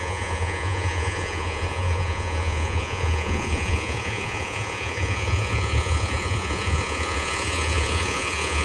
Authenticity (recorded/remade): remade